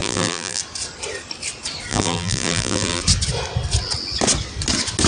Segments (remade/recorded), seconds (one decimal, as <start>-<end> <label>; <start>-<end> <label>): 0.0-0.6 remade; 0.6-1.9 recorded; 1.9-3.0 remade; 3.0-5.1 recorded